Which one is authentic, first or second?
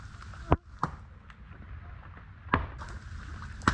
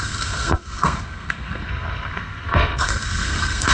first